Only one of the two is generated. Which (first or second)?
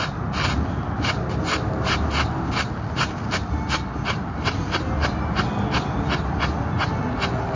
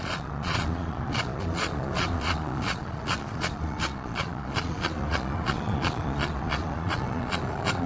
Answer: second